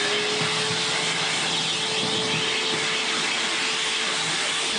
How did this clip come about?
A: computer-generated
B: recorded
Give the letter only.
B